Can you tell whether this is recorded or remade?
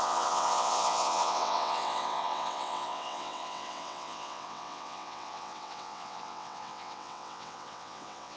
remade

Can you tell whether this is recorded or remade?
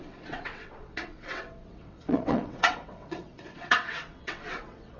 remade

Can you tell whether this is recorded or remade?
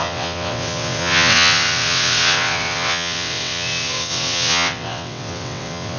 remade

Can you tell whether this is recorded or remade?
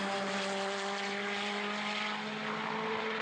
recorded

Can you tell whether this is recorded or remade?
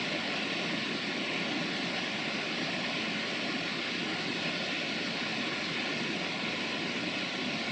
recorded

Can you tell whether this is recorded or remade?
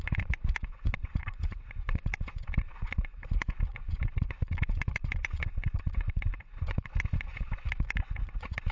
remade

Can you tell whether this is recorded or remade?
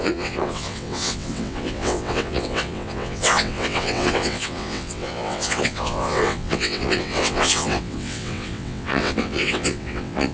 remade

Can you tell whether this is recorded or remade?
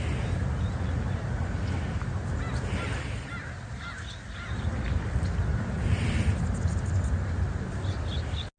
recorded